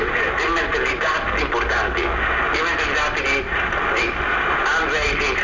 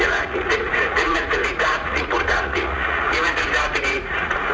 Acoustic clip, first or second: first